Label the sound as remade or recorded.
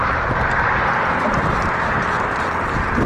recorded